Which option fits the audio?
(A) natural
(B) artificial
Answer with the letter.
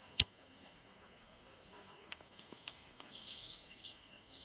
B